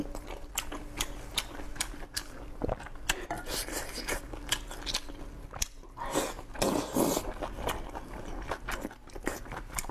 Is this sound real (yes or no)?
yes